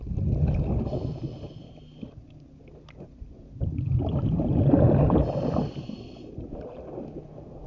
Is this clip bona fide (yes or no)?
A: yes